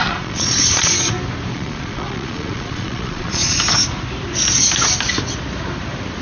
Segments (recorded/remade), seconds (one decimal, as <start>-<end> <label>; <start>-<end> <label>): 0.0-0.9 remade; 0.9-1.5 recorded; 1.5-3.6 remade; 3.6-6.2 recorded